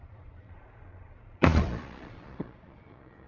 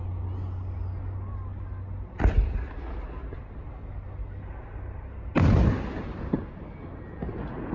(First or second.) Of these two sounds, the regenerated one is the first